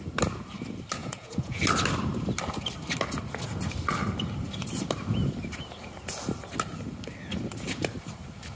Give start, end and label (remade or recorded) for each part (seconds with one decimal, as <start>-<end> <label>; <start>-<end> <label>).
0.0-1.0 recorded; 1.0-1.6 remade; 1.6-8.6 recorded